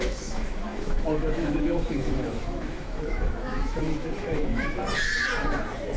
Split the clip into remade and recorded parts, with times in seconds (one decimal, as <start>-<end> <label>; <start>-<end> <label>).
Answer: 0.0-4.8 remade; 4.8-6.0 recorded